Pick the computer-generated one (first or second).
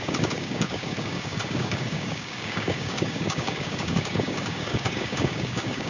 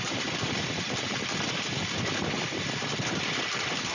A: first